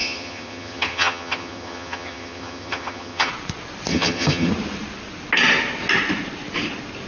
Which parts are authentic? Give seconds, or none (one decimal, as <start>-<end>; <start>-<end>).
3.3-3.9; 4.5-7.1